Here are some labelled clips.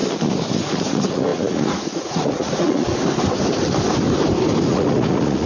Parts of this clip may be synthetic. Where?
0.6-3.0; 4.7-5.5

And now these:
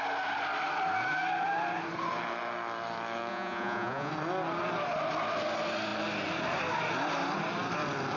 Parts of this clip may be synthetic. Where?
3.3-4.1

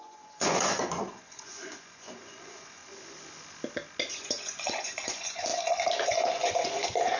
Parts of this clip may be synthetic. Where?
0.0-2.8; 4.1-7.2

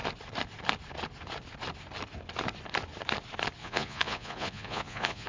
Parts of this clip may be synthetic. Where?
3.6-5.3